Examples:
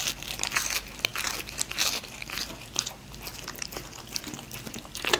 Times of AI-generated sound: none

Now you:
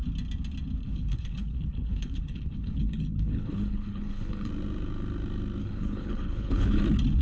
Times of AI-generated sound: 0.8-4.5 (codec, HILCodec); 5.6-6.8

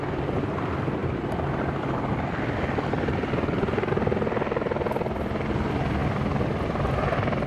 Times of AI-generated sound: none